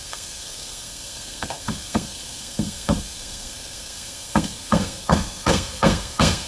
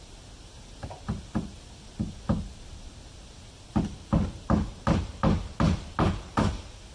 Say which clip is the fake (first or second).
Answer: first